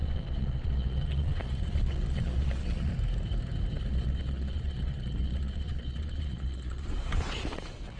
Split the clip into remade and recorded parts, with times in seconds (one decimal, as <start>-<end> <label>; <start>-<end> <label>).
0.0-2.9 remade; 2.9-3.9 recorded; 3.9-8.0 remade